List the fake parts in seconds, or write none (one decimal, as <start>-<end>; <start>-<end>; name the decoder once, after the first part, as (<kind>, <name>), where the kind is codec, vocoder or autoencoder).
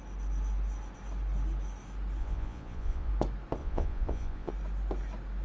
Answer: 2.2-3.1 (vocoder, Vocos); 3.6-4.5